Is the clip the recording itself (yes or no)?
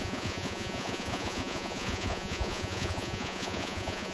no